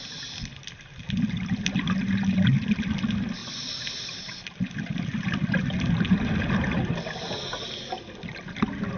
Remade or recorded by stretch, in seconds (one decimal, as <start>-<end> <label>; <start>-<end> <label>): 0.0-9.0 recorded